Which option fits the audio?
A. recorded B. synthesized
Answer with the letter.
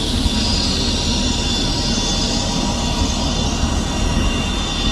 A